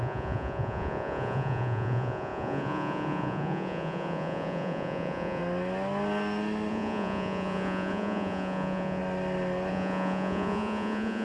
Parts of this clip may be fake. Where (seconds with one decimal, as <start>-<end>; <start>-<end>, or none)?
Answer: 0.0-5.4; 6.7-9.0; 9.7-11.2

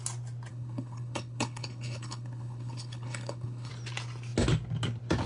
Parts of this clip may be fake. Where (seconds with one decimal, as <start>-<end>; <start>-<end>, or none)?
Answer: 0.5-3.7

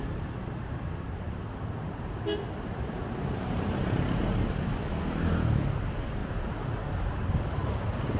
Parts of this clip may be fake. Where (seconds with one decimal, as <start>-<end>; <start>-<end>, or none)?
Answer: 3.4-4.3